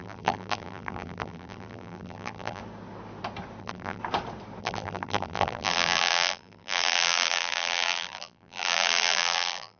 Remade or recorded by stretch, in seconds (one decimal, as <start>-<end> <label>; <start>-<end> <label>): 0.0-2.6 remade; 2.6-3.6 recorded; 3.6-4.0 remade; 4.0-4.6 recorded; 4.6-9.8 remade